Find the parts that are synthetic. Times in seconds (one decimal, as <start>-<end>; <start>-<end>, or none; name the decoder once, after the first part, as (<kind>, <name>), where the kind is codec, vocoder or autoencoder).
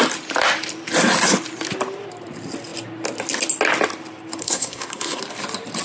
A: 4.4-5.2 (codec, SNAC)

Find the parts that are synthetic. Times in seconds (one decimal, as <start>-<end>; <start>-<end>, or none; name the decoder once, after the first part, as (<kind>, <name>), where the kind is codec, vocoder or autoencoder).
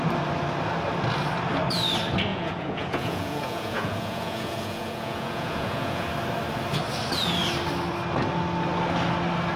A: 2.3-6.1 (vocoder, Vocos)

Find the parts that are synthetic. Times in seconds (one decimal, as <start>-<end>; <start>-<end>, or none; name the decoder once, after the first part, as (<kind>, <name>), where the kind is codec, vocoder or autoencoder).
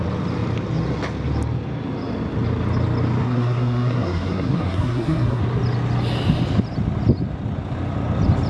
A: 3.2-5.4 (codec, SNAC)